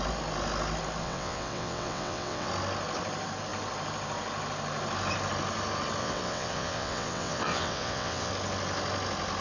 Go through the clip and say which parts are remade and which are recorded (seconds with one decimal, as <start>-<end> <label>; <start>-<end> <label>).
0.0-1.0 recorded; 1.0-2.5 remade; 2.5-6.0 recorded; 6.0-8.3 remade; 8.3-9.4 recorded